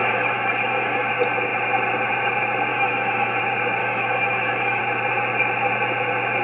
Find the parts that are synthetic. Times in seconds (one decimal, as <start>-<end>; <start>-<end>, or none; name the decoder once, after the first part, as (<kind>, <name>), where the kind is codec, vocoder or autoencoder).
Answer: 0.0-1.1 (autoencoder, DAC-VAE); 2.7-3.4; 3.8-4.8